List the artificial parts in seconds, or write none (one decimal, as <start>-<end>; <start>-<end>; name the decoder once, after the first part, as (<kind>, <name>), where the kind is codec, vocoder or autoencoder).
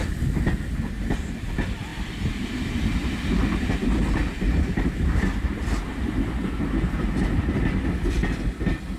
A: 1.9-3.7 (vocoder, BigVGAN v2); 4.2-6.1